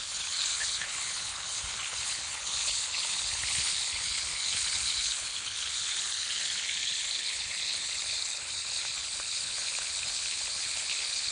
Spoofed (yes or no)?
yes